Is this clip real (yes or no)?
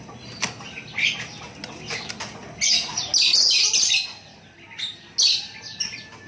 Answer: yes